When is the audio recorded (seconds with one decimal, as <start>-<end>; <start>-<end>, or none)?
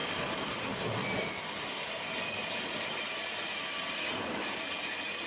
0.0-5.3